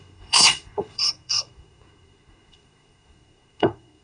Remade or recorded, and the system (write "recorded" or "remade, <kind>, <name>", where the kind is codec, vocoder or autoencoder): remade, codec, SNAC